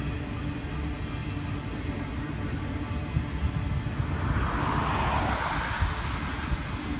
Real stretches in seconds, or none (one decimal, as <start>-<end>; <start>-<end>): 0.0-7.0